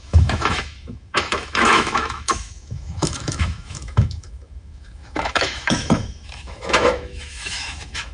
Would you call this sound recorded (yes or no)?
no